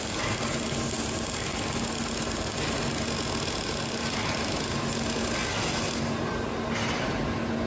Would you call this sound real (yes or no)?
yes